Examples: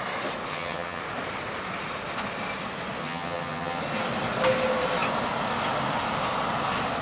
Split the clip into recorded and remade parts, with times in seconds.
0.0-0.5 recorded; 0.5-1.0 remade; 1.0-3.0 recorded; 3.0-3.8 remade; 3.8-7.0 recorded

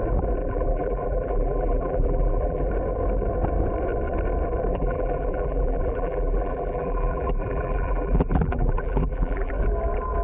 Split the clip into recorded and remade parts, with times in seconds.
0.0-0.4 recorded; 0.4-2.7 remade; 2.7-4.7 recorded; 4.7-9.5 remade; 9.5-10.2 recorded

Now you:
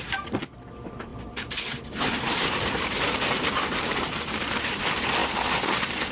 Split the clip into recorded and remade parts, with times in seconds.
0.0-1.1 recorded; 1.1-4.8 remade; 4.8-5.2 recorded; 5.2-6.1 remade

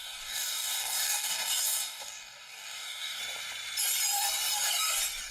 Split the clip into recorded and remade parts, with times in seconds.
0.0-3.2 remade; 3.2-5.3 recorded